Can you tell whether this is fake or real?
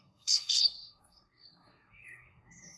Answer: fake